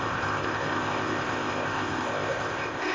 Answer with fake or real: fake